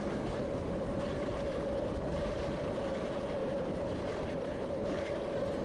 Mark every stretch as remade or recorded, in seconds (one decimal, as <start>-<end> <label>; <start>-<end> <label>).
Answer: 0.0-4.5 recorded; 4.5-5.0 remade; 5.0-5.6 recorded